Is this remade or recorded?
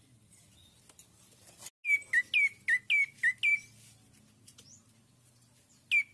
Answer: recorded